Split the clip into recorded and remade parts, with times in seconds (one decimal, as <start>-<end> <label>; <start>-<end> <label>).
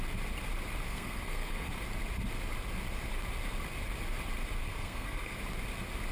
0.0-0.9 recorded; 0.9-1.7 remade; 1.7-4.6 recorded; 4.6-5.4 remade; 5.4-6.1 recorded